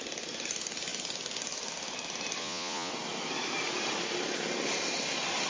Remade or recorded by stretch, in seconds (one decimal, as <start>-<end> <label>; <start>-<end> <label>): 0.0-2.4 recorded; 2.4-2.9 remade; 2.9-5.5 recorded